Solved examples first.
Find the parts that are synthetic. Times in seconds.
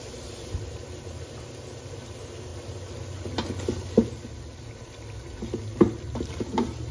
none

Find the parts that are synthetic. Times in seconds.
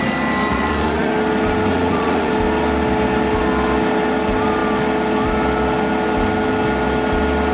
0.5-1.1 (vocoder, Vocos); 1.7-2.3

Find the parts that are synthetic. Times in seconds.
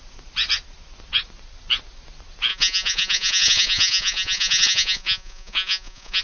2.5-6.2 (vocoder, Vocos)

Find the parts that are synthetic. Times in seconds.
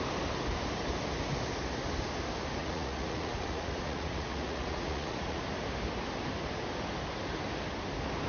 2.6-5.4 (vocoder, Vocos)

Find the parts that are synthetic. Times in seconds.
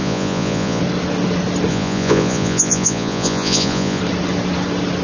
0.0-0.8 (vocoder, Vocos); 1.7-4.0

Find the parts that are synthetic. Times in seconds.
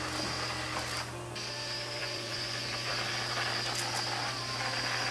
2.0-2.9 (vocoder, Vocos)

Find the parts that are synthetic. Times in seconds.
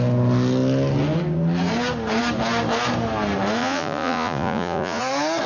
3.6-5.0 (vocoder, Vocos)